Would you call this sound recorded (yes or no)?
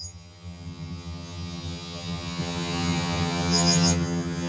no